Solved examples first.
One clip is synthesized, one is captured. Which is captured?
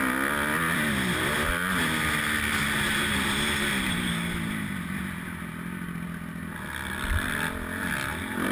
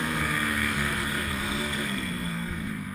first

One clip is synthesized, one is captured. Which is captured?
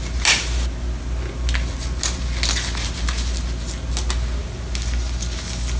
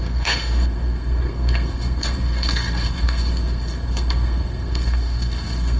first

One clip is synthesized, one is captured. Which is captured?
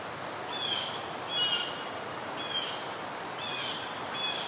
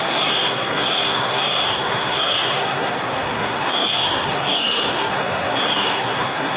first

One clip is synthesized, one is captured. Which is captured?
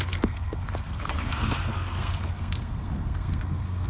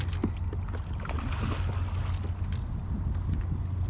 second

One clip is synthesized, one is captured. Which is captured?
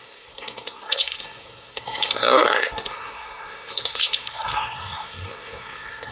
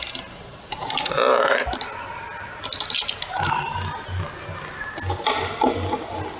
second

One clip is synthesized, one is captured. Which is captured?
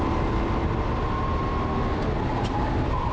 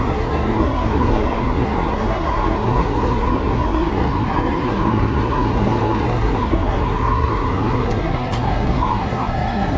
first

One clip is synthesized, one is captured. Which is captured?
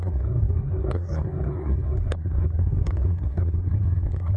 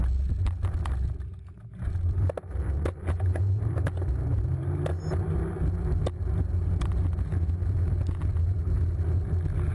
second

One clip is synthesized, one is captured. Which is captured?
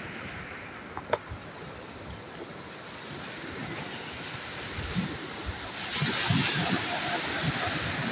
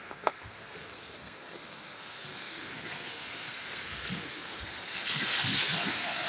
first